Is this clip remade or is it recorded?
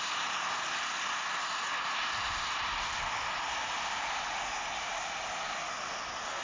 recorded